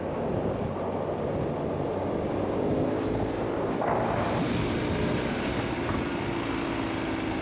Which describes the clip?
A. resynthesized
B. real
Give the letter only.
B